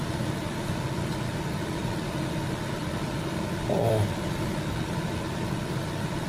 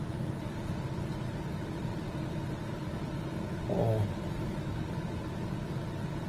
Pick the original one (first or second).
second